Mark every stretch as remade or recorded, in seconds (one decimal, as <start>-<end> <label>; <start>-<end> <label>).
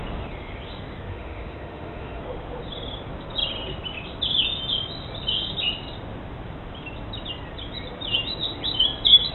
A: 0.0-1.1 recorded; 1.1-2.2 remade; 2.2-9.3 recorded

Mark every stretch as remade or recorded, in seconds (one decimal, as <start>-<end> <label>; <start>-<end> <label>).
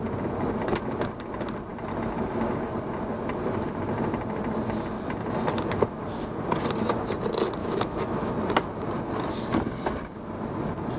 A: 0.0-7.6 recorded; 7.6-8.3 remade; 8.3-11.0 recorded